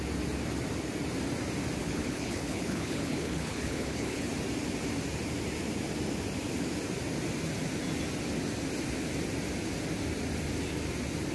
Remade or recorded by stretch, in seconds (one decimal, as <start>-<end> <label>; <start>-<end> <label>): 0.0-1.8 recorded; 1.8-4.3 remade; 4.3-11.3 recorded